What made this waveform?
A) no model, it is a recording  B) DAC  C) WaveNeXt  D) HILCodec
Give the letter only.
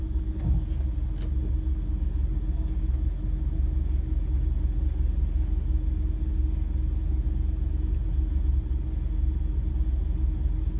A